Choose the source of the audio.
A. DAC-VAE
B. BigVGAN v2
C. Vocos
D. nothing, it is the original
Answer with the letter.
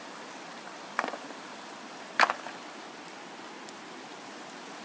D